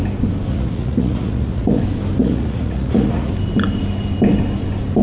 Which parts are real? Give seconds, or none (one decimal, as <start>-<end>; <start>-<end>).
0.0-0.5; 1.8-2.2; 3.3-5.0

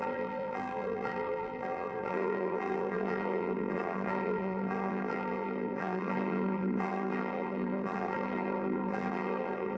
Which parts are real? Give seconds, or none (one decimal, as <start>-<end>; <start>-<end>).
none